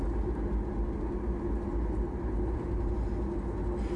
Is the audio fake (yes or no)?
no